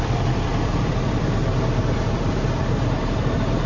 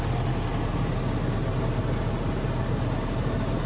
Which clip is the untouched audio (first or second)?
second